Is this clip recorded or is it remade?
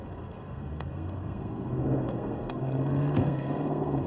remade